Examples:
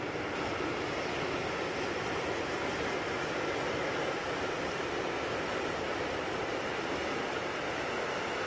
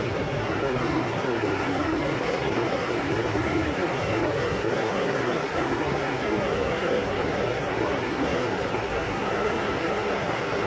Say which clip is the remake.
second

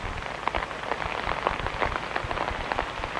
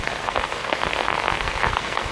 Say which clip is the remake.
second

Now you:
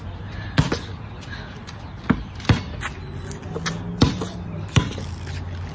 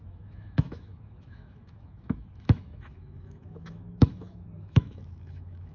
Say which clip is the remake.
second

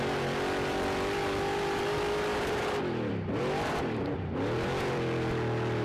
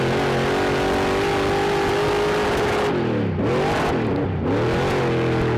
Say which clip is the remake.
first